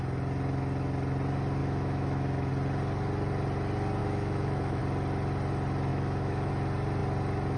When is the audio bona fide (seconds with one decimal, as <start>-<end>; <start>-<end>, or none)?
0.0-1.6; 2.5-4.0; 4.8-5.9; 6.5-7.6